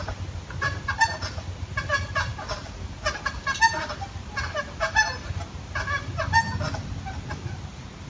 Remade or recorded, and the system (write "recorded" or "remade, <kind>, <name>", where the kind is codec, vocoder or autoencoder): recorded